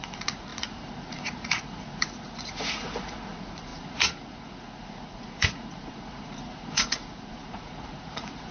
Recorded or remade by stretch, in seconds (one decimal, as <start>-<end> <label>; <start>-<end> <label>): 0.0-8.5 remade